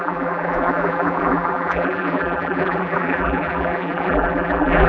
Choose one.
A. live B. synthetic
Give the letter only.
B